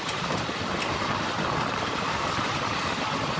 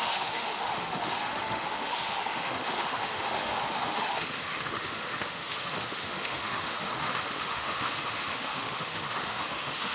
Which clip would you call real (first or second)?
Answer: first